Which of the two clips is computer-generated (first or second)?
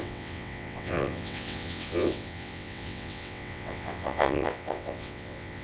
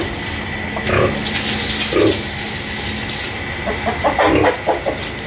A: first